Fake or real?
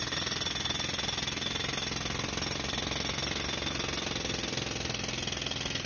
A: real